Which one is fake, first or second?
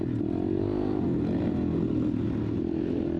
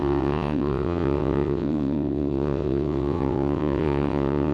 second